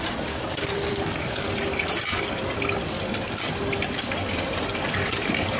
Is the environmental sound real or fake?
fake